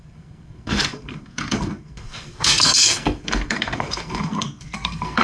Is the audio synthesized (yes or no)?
yes